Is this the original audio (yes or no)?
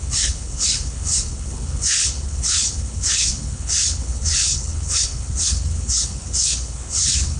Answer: no